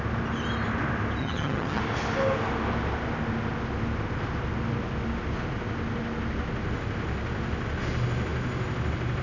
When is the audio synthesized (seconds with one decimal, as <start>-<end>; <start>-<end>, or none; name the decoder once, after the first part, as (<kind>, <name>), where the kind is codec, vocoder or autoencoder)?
1.2-1.8 (vocoder, HiFi-GAN)